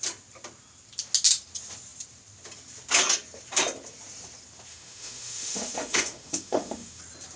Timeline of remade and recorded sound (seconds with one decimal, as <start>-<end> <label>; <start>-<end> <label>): 0.0-4.7 recorded; 4.7-7.0 remade; 7.0-7.4 recorded